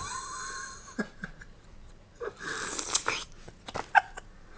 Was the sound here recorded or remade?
recorded